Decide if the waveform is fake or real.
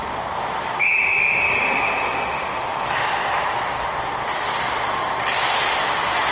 real